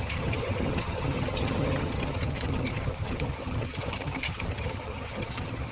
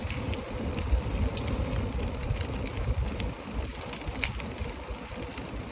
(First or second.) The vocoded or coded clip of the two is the first